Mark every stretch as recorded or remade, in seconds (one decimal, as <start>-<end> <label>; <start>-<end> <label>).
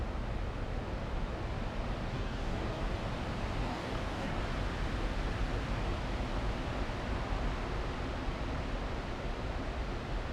0.0-2.1 recorded; 2.1-2.8 remade; 2.8-3.6 recorded; 3.6-4.4 remade; 4.4-10.3 recorded